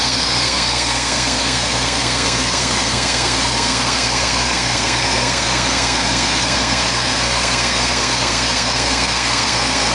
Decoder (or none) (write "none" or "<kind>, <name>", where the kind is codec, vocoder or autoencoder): codec, SNAC